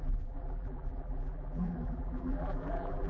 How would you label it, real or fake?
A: fake